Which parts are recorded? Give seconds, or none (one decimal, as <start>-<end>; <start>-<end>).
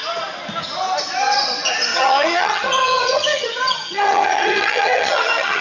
0.0-1.9